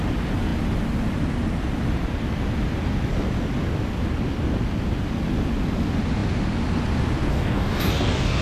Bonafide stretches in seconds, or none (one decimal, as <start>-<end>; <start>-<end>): 0.0-7.3

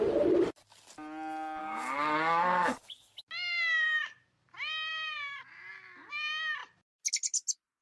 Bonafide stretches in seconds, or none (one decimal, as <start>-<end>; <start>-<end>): 0.0-1.6; 3.2-7.8